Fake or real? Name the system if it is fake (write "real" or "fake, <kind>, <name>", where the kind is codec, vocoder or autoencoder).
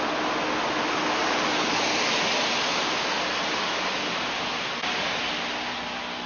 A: real